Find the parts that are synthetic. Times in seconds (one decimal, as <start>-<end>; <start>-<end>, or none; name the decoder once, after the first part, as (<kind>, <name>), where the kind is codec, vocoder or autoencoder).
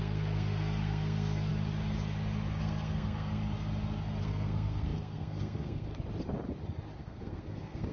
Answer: 0.0-1.5 (codec, SNAC); 2.6-3.4; 4.2-5.9; 7.0-7.9